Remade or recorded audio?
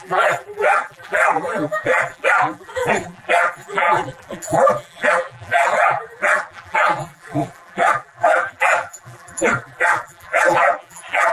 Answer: remade